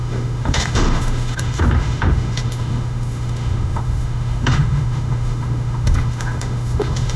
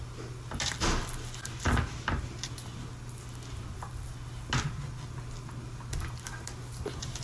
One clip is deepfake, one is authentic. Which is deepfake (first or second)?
first